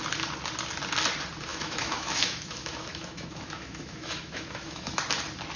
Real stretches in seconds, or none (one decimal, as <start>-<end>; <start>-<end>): 0.0-1.5; 4.9-5.6